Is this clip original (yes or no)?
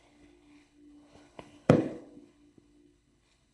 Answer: no